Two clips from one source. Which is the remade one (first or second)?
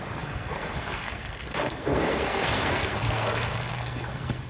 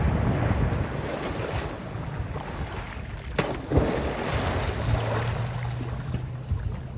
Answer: first